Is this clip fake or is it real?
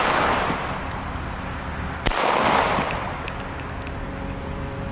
real